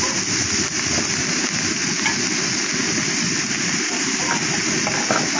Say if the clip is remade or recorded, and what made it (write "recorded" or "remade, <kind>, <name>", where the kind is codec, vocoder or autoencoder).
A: recorded